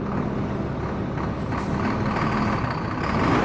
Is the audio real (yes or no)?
yes